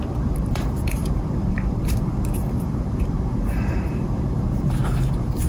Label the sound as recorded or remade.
remade